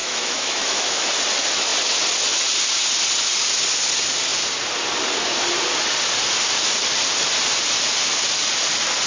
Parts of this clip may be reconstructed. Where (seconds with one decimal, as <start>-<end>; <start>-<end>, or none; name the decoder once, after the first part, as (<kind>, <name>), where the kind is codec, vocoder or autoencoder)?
0.0-1.1 (autoencoder, DAC-VAE)